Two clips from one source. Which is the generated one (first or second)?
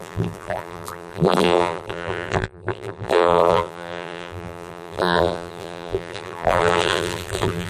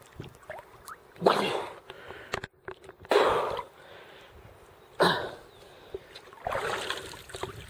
first